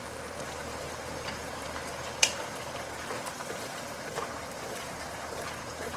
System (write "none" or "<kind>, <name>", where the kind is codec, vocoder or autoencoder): vocoder, BigVGAN v2